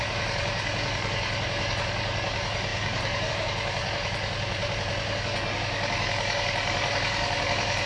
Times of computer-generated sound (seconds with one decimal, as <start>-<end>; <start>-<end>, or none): 0.0-4.6; 5.1-7.9